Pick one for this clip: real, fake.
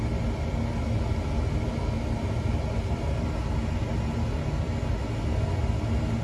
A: real